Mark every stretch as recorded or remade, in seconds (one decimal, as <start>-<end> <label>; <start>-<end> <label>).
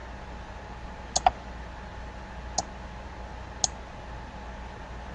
0.0-5.1 recorded